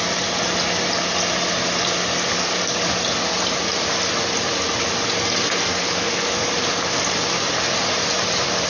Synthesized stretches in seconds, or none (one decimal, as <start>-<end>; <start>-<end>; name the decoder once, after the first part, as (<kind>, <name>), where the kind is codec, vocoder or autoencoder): 2.3-2.9 (codec, DAC); 5.7-6.5